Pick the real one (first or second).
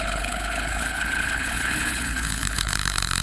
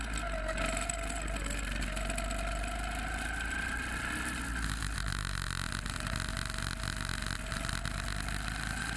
second